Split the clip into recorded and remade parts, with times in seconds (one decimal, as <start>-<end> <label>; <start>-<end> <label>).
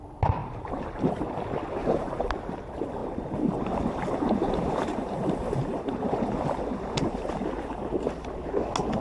0.0-0.4 recorded; 0.4-1.1 remade; 1.1-1.8 recorded; 1.8-2.3 remade; 2.3-3.0 recorded; 3.0-7.8 remade; 7.8-9.0 recorded